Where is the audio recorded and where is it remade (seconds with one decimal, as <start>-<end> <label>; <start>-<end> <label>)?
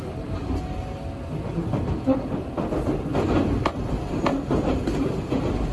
0.0-5.7 recorded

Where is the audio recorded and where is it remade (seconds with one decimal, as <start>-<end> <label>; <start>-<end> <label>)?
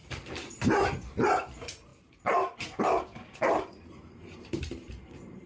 0.0-5.5 remade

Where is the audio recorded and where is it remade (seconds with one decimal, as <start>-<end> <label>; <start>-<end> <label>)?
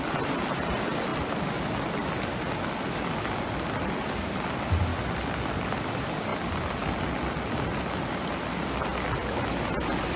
0.0-10.2 recorded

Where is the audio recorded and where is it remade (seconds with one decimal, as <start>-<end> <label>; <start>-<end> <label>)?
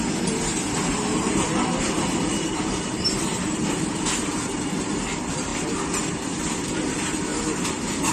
0.0-2.4 recorded; 2.4-3.2 remade; 3.2-8.1 recorded